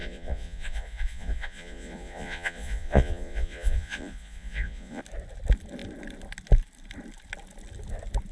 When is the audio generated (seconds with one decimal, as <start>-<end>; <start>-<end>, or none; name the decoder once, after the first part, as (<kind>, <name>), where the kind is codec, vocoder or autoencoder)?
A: 0.0-5.0 (vocoder, Vocos)